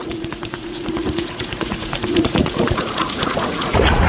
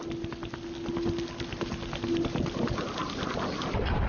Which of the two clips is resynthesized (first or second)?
first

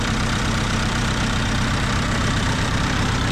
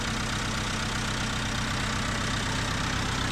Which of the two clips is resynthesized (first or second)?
first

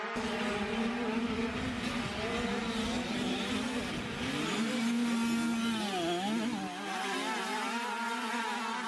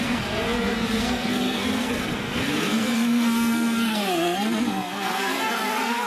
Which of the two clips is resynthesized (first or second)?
second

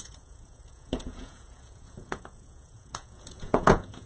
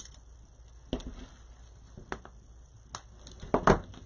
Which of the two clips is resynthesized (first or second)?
first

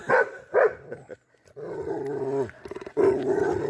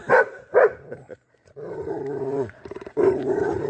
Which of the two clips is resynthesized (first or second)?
second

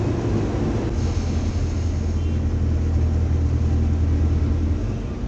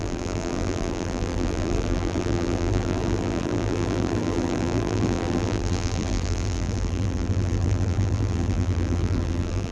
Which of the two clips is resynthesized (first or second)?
second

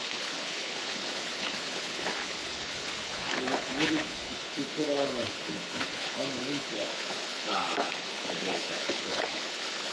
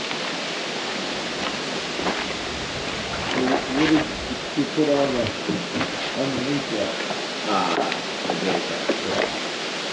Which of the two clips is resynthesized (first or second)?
first